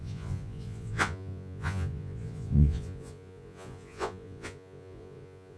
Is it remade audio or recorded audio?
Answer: remade